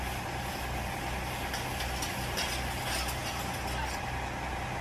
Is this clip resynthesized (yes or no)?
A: no